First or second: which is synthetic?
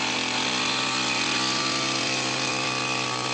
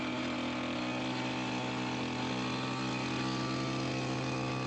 first